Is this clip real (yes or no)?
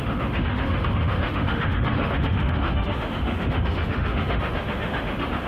no